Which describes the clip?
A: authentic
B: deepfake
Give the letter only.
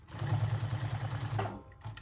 A